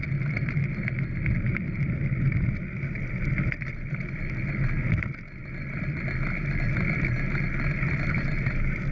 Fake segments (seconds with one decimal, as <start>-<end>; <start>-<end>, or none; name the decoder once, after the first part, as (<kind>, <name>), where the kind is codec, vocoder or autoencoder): none